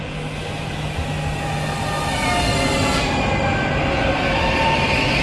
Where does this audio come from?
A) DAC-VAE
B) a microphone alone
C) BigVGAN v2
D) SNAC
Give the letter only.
B